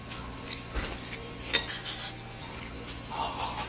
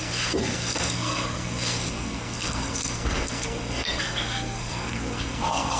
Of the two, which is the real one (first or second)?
first